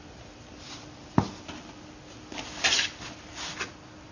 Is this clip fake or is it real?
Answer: real